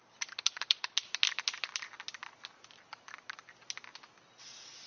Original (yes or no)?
yes